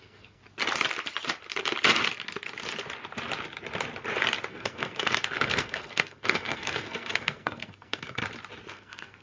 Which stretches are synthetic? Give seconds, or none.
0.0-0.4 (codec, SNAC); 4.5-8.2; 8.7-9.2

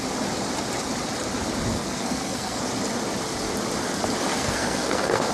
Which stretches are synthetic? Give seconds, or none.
1.7-2.6 (codec, SNAC); 4.3-5.3

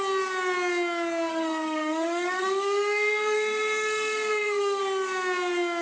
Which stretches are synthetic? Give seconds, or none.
1.3-4.8 (codec, SNAC)

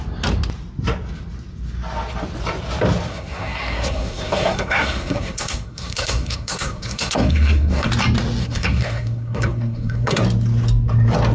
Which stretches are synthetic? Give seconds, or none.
3.1-7.9 (codec, SNAC); 8.4-10.2

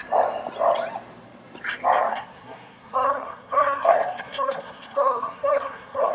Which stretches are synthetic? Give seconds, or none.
2.1-6.1 (codec, SNAC)

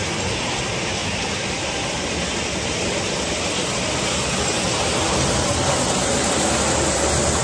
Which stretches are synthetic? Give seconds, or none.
none

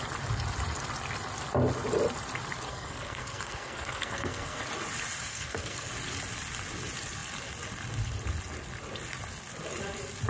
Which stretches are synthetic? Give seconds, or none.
2.7-4.6 (codec, SNAC); 5.3-5.9

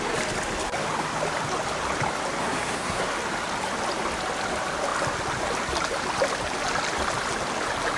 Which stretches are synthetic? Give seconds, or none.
2.4-3.0 (codec, SNAC)